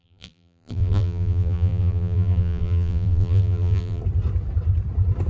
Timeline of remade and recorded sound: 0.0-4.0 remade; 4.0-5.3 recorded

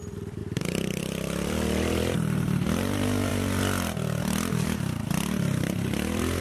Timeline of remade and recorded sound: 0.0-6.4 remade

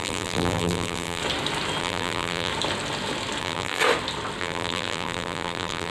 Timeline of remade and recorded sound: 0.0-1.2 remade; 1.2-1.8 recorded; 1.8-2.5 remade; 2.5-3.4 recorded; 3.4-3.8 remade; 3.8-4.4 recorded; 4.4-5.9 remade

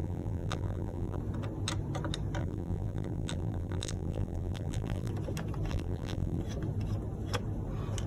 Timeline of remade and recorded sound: 0.0-1.2 remade; 1.2-2.4 recorded; 2.4-5.1 remade; 5.1-5.7 recorded; 5.7-6.4 remade; 6.4-8.1 recorded

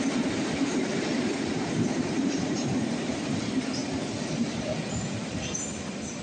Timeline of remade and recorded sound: 0.0-0.6 recorded; 0.6-2.7 remade; 2.7-6.2 recorded